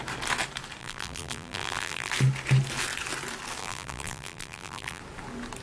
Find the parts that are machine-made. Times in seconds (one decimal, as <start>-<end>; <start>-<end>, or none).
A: 0.8-2.1; 3.6-5.0